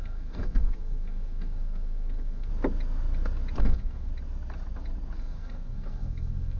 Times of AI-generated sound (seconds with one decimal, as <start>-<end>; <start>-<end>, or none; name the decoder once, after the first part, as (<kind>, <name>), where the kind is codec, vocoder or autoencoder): 0.0-2.5 (codec, SNAC); 3.6-4.1; 5.2-6.6